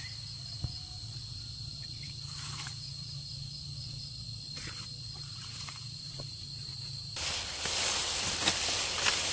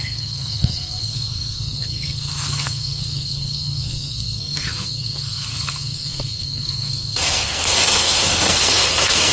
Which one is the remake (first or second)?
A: second